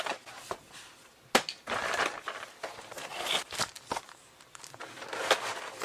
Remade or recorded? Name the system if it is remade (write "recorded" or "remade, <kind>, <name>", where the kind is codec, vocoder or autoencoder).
recorded